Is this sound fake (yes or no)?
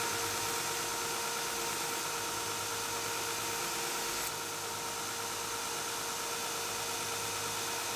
no